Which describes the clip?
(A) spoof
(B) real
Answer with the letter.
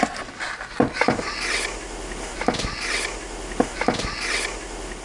B